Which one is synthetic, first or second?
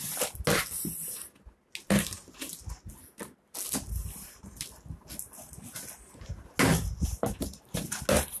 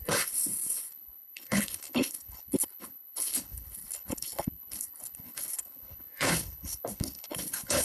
second